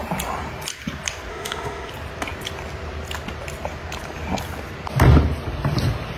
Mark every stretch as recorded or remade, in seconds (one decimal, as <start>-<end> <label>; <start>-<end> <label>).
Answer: 0.0-1.3 recorded; 1.3-1.9 remade; 1.9-6.2 recorded